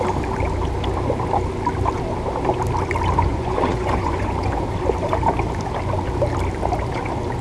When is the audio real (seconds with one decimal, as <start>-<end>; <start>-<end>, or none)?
0.0-3.3; 4.6-7.4